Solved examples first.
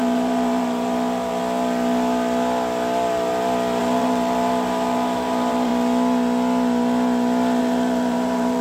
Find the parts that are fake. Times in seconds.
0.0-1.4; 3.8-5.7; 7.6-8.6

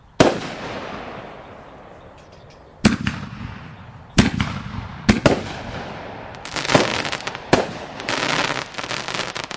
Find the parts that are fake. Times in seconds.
none

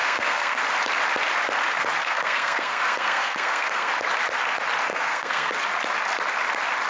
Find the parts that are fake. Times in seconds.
0.0-0.6; 2.0-3.9; 4.9-5.5

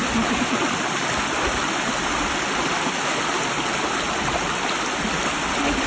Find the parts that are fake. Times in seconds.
none

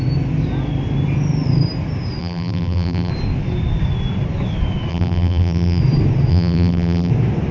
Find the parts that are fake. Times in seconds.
2.2-3.1; 4.9-5.8; 6.3-7.1

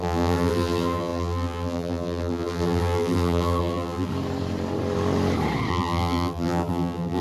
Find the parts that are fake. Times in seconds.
0.0-4.1; 5.7-7.2

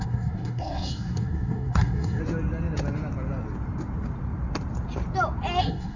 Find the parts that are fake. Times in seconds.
0.0-2.2; 5.6-6.0